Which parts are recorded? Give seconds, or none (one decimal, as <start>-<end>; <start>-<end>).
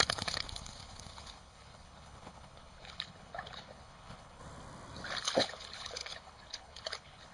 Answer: 4.4-5.2